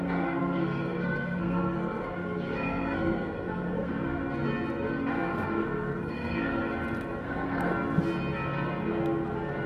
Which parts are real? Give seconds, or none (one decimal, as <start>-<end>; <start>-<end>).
4.2-5.1; 6.6-7.2; 7.7-9.7